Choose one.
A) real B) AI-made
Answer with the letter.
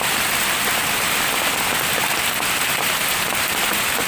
A